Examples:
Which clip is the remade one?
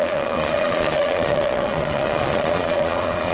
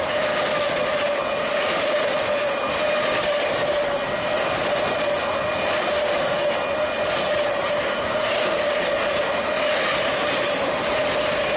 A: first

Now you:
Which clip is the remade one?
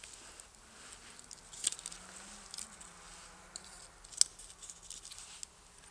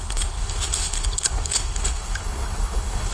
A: second